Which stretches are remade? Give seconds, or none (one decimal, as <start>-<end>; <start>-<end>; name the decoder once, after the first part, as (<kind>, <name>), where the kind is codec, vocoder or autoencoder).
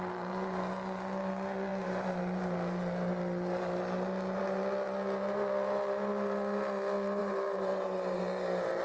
7.2-8.2 (vocoder, BigVGAN v2)